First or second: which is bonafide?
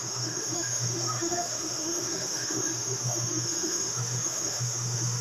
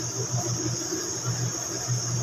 second